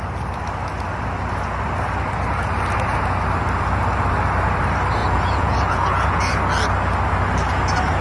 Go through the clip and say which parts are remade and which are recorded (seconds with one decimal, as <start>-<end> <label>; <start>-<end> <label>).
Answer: 0.0-5.0 recorded; 5.0-6.4 remade; 6.4-8.0 recorded